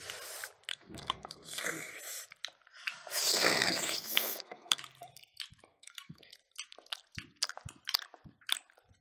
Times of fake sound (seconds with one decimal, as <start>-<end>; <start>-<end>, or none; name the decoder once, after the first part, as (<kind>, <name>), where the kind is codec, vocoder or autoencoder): 0.7-1.9 (codec, SNAC); 3.3-4.8; 5.7-6.2